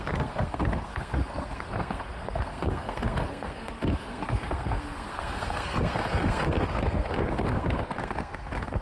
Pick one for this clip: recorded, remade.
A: remade